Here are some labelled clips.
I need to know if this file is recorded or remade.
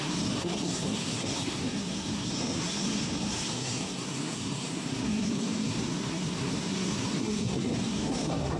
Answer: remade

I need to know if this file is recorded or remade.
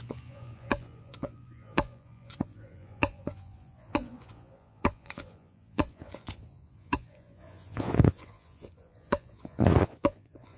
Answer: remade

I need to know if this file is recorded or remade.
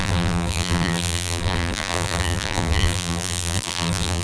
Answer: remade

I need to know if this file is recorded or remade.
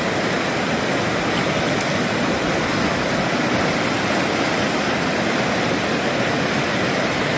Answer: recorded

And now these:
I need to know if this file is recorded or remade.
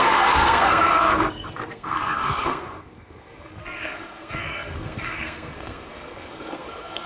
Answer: remade